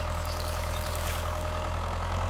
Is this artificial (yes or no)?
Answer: yes